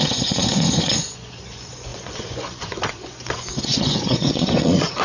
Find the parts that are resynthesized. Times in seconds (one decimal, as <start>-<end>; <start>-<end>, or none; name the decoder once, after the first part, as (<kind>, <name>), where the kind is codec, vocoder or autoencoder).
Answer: 0.0-5.0 (vocoder, Vocos)